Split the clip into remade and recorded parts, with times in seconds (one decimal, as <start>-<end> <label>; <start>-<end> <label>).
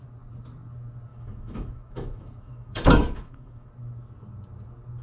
0.0-1.1 recorded; 1.1-3.7 remade; 3.7-5.0 recorded